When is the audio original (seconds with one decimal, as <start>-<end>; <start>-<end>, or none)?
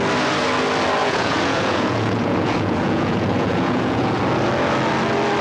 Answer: 0.0-1.0; 4.2-5.4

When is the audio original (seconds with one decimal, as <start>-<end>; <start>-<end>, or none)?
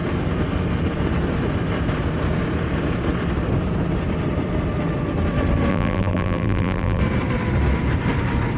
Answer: 0.0-5.7; 7.0-8.6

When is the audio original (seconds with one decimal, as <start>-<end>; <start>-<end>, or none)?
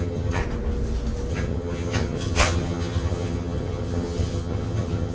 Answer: 0.4-1.3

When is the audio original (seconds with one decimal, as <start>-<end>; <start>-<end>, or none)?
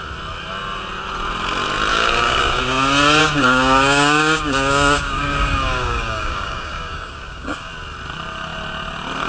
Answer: 0.0-1.9; 2.6-3.2; 7.7-9.3